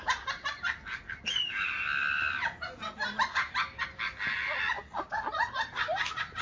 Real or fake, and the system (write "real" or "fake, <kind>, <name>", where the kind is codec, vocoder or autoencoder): real